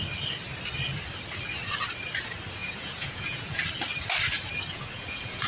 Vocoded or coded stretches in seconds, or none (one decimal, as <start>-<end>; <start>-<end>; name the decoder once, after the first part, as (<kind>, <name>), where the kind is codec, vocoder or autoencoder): 2.6-3.6 (vocoder, Vocos); 4.7-5.5